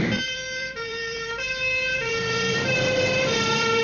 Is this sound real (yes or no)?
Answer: no